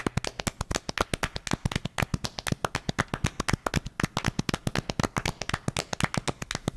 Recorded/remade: recorded